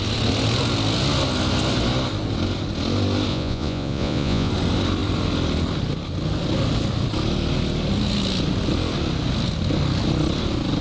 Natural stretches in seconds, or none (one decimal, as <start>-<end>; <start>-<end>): 0.0-3.3; 4.5-10.8

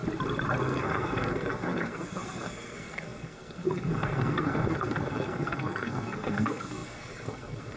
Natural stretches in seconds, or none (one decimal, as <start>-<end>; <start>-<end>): 0.0-0.6

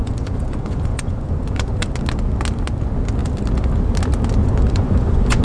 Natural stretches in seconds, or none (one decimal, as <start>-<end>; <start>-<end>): 1.9-4.4

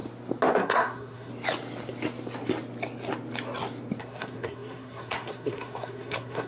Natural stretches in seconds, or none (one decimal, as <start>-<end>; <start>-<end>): 0.0-0.5; 1.3-4.0

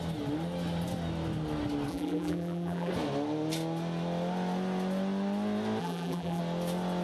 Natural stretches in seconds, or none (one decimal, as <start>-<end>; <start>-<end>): 0.0-1.9; 2.9-5.8; 6.4-7.0

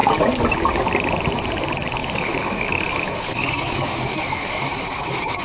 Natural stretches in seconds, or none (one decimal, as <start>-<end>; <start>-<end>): 0.5-2.0

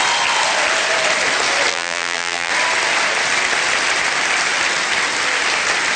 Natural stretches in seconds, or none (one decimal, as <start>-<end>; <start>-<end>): 0.0-1.7; 2.5-6.0

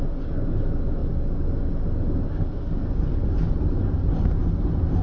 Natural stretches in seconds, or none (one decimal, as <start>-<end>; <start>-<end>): 0.0-5.0